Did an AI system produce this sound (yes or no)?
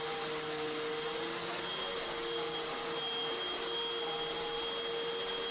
no